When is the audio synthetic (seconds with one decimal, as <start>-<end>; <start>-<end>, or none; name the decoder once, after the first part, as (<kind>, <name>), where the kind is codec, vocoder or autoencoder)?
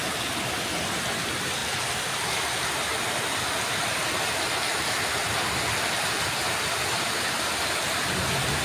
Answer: none